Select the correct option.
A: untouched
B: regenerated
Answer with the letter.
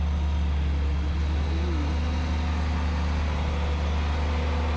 A